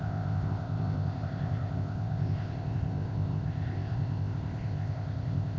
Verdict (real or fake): fake